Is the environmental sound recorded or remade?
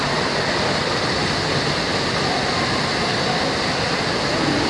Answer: recorded